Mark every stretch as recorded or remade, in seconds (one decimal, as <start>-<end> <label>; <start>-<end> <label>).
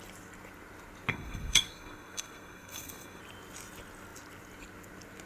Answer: 0.0-1.1 recorded; 1.1-3.2 remade; 3.2-5.3 recorded